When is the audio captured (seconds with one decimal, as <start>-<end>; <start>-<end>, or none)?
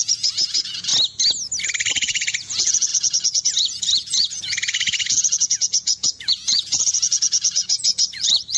0.9-1.9